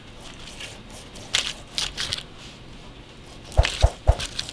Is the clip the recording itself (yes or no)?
yes